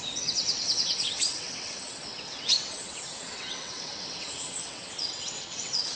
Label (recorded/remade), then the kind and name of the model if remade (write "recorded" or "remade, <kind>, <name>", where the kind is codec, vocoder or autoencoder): remade, vocoder, WaveNeXt